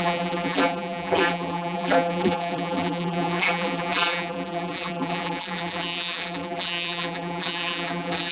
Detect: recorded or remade remade